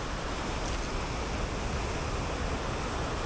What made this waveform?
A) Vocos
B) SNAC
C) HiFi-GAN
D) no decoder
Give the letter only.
D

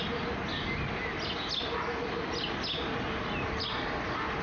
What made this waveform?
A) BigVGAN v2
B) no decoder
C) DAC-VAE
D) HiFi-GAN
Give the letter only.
B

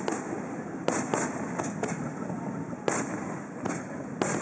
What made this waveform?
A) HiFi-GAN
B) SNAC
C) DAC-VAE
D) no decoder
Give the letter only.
D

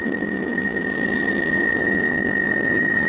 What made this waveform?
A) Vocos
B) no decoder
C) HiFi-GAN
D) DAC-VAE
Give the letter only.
C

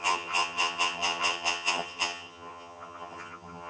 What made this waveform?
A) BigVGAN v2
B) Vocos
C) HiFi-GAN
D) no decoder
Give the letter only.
C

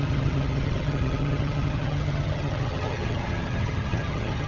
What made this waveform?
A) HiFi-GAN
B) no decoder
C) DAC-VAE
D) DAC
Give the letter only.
A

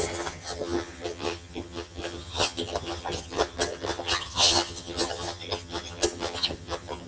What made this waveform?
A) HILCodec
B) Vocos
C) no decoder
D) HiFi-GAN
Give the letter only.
D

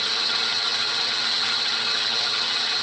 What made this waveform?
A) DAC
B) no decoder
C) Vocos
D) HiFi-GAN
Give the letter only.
D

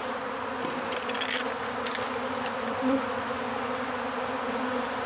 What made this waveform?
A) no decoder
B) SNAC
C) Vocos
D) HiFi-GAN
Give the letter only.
A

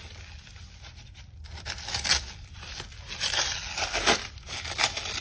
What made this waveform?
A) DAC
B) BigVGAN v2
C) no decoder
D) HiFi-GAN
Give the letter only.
C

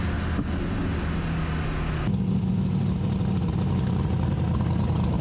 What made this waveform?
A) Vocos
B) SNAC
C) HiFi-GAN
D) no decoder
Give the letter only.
D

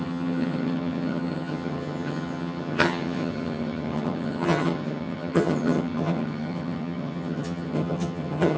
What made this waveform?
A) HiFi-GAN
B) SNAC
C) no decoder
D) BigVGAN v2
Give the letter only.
A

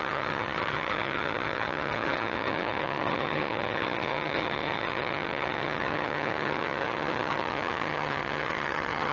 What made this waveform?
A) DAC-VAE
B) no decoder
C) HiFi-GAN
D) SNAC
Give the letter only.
C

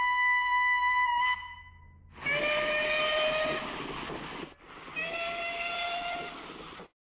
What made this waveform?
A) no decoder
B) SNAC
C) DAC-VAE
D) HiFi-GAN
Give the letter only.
A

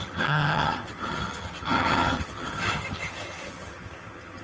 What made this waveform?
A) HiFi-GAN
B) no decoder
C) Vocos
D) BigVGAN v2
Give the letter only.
A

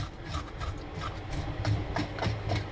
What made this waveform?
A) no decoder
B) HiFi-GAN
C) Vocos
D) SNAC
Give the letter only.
A